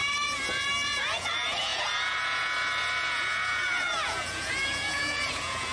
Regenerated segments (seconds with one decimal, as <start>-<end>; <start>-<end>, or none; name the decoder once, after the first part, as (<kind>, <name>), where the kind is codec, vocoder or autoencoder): 1.0-5.7 (vocoder, Vocos)